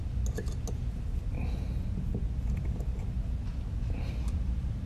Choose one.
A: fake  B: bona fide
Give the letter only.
B